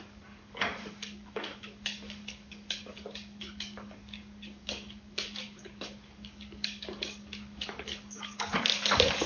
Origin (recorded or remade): remade